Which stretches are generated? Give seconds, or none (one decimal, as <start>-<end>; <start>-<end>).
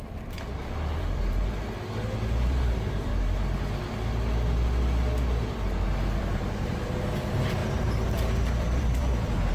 0.0-3.1; 6.2-9.5